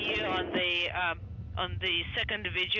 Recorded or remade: recorded